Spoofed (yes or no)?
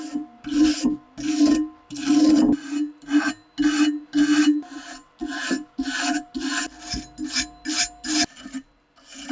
no